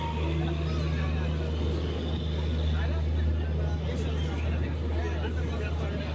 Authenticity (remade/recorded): recorded